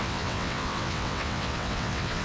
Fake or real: fake